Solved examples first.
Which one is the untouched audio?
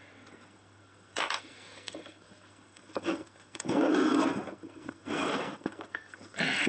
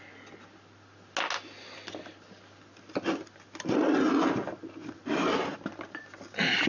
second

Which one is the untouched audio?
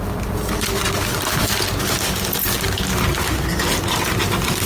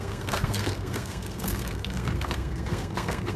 first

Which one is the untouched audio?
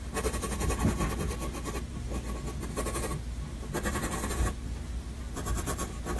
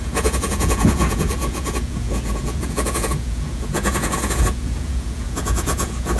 first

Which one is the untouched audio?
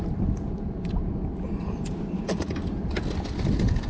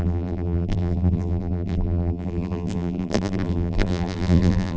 first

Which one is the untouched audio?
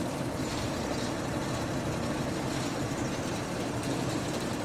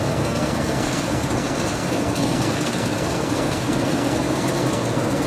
first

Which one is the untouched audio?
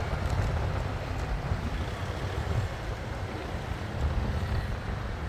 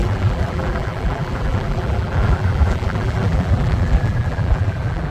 first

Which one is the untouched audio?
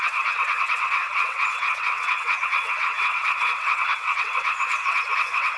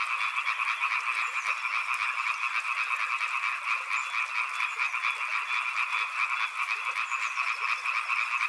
second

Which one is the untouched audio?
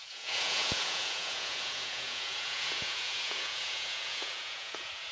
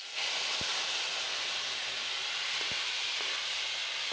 second